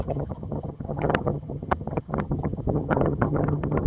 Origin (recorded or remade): remade